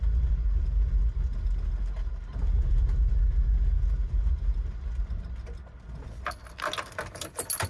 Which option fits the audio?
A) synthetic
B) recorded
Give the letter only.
B